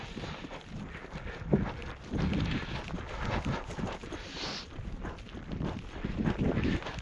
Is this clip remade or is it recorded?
recorded